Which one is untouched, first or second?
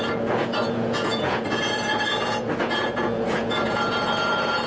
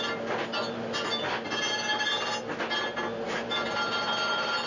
second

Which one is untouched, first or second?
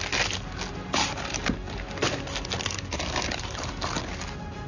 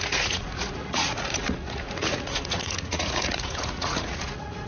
first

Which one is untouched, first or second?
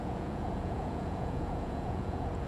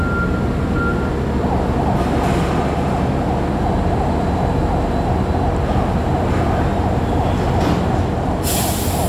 second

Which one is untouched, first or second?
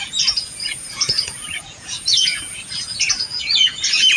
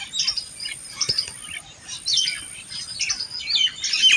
second